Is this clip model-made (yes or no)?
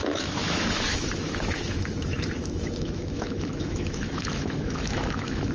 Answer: yes